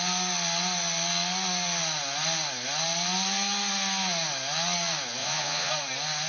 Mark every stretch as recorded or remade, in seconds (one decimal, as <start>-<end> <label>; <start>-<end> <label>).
0.0-5.2 recorded; 5.2-5.7 remade; 5.7-6.3 recorded